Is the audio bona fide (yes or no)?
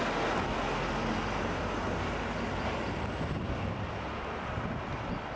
yes